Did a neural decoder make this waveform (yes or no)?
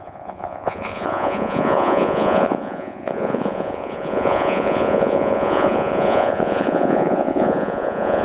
yes